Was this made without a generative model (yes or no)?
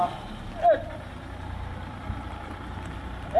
yes